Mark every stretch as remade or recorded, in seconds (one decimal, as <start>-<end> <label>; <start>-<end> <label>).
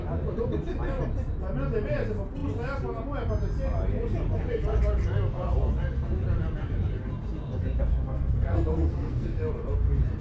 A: 0.0-7.9 recorded; 7.9-9.5 remade; 9.5-10.2 recorded